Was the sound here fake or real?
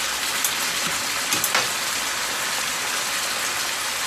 real